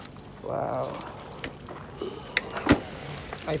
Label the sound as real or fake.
real